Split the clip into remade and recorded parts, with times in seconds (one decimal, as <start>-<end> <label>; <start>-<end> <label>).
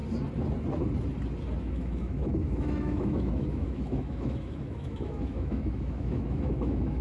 0.0-1.6 recorded; 1.6-7.0 remade